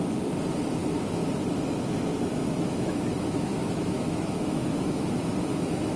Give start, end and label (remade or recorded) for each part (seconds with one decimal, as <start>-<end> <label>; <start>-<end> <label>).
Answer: 0.0-0.8 recorded; 0.8-1.3 remade; 1.3-2.4 recorded; 2.4-6.0 remade